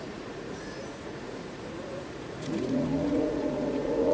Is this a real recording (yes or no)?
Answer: no